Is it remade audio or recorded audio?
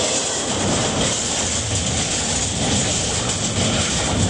recorded